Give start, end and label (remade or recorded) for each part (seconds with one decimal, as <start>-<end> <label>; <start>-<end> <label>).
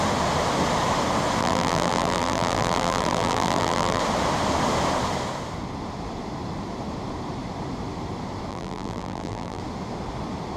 0.0-1.4 recorded; 1.4-4.0 remade; 4.0-8.5 recorded; 8.5-9.6 remade; 9.6-10.6 recorded